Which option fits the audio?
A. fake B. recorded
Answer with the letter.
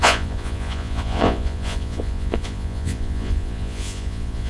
A